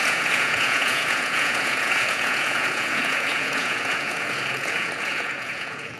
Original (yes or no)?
no